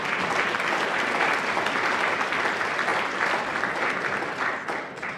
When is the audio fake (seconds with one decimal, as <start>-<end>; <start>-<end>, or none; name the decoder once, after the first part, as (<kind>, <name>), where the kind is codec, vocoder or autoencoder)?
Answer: none